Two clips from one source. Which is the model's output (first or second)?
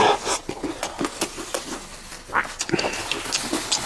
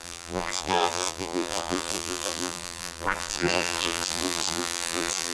second